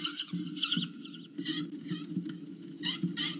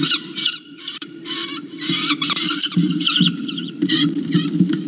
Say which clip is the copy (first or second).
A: second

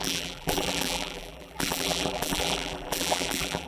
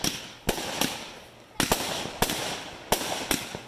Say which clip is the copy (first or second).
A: first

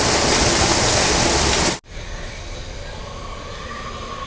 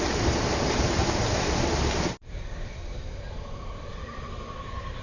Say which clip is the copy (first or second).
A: second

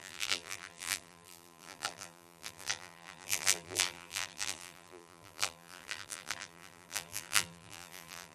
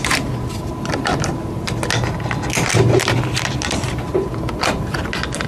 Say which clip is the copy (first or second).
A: first